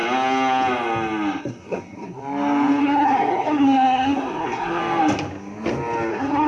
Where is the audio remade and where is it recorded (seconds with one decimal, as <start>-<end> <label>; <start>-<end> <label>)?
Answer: 0.0-1.4 recorded; 1.4-2.2 remade; 2.2-2.8 recorded; 2.8-4.8 remade; 4.8-6.1 recorded; 6.1-6.5 remade